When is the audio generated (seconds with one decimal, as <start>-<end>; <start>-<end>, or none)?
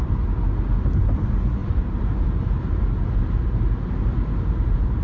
1.6-3.3; 4.1-5.0